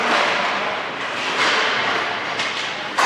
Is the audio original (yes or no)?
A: yes